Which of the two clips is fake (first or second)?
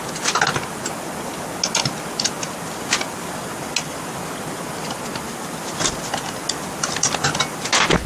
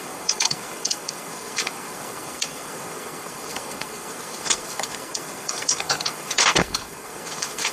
second